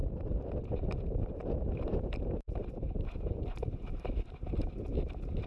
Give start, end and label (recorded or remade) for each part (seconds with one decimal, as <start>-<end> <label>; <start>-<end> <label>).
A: 0.0-0.6 remade; 0.6-1.4 recorded; 1.4-3.5 remade; 3.5-5.5 recorded